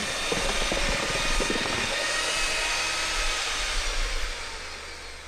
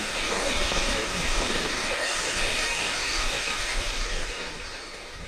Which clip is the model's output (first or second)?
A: second